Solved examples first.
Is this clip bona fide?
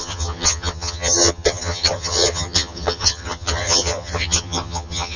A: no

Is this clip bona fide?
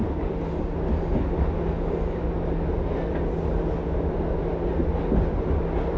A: yes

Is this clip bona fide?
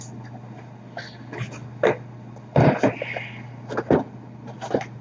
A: yes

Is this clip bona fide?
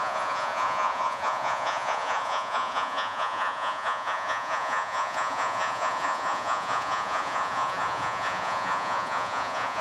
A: no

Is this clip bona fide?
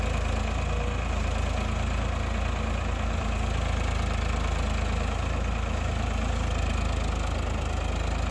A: yes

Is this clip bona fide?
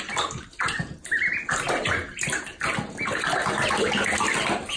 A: yes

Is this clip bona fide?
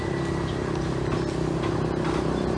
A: yes